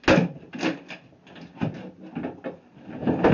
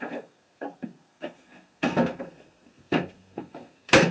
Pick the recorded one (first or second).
first